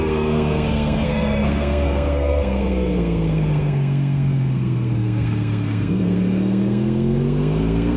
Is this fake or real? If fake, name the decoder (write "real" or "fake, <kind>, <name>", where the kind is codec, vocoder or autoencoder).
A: fake, codec, SNAC